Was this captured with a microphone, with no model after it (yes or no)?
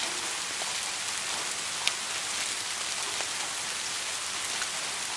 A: yes